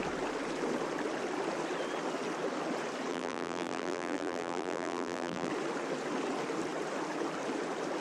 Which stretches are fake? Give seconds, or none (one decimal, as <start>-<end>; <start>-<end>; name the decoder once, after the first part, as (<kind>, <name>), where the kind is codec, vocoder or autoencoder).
3.1-5.5 (vocoder, BigVGAN v2)